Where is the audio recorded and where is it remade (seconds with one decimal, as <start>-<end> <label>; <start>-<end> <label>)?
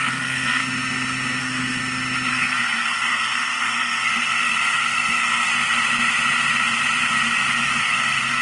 0.0-0.6 remade; 0.6-1.4 recorded; 1.4-1.8 remade; 1.8-2.3 recorded; 2.3-5.5 remade; 5.5-7.8 recorded; 7.8-8.4 remade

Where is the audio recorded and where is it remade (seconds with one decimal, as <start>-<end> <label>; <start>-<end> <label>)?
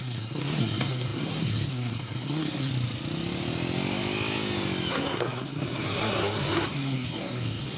0.0-2.7 remade; 2.7-4.9 recorded; 4.9-7.8 remade